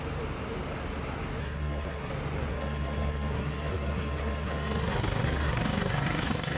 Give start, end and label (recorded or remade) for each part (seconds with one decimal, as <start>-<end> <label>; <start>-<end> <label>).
0.0-1.4 recorded; 1.4-2.1 remade; 2.1-2.5 recorded; 2.5-6.6 remade